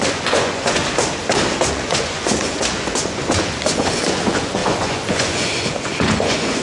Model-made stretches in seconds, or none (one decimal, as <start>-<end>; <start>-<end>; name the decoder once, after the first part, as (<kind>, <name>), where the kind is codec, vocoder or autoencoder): 0.0-0.8 (vocoder, Vocos); 1.7-6.6